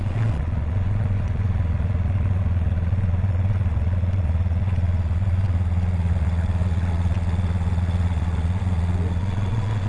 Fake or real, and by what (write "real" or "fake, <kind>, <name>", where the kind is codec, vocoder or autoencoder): fake, vocoder, Vocos